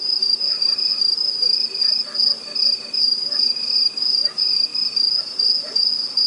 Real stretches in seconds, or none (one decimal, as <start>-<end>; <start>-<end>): 0.9-3.0; 4.7-5.2

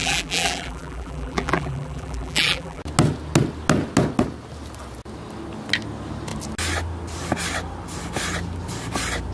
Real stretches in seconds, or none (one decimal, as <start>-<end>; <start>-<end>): 2.8-9.3